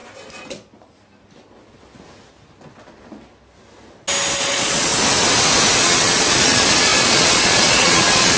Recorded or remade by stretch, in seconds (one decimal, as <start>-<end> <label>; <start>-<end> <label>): 0.0-4.4 recorded; 4.4-4.9 remade; 4.9-5.8 recorded; 5.8-8.4 remade